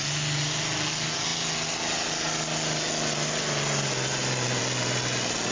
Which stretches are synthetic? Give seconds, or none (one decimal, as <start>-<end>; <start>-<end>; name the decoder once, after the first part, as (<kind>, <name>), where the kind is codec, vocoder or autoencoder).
none